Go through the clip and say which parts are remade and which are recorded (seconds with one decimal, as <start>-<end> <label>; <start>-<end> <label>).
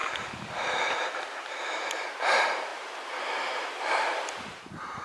0.0-1.1 recorded; 1.1-5.0 remade